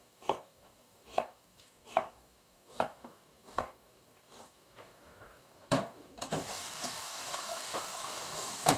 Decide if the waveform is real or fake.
fake